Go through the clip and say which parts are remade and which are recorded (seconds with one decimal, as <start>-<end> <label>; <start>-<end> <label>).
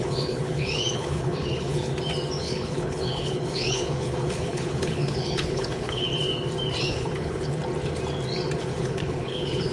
0.0-1.9 remade; 1.9-2.4 recorded; 2.4-6.1 remade; 6.1-6.8 recorded; 6.8-7.6 remade; 7.6-8.6 recorded; 8.6-9.7 remade